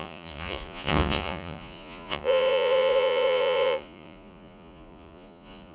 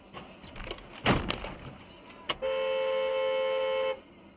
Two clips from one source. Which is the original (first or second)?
second